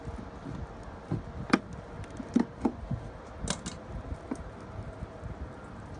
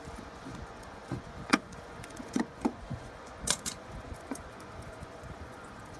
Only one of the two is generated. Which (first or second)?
second